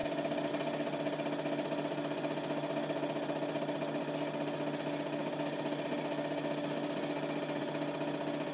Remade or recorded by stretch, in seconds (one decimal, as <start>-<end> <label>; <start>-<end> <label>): 0.0-8.5 recorded